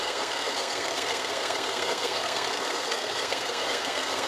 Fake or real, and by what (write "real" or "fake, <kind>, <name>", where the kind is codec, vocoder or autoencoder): fake, codec, SNAC